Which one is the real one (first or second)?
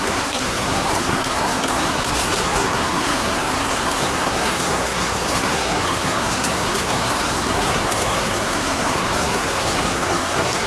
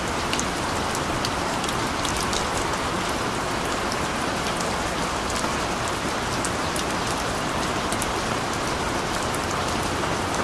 second